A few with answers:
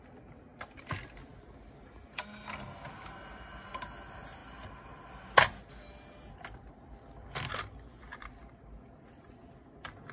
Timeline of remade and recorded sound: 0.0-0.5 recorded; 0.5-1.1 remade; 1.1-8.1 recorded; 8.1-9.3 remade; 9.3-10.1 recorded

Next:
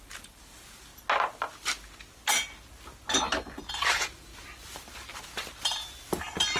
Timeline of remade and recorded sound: 0.0-0.9 remade; 0.9-3.7 recorded; 3.7-4.3 remade; 4.3-6.1 recorded; 6.1-6.6 remade

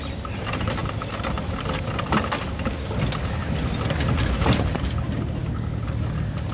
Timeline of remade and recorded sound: 0.0-6.5 recorded